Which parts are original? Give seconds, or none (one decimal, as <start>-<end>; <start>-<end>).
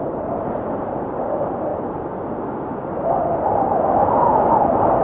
1.7-5.0